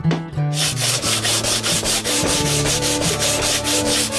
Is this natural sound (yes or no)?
no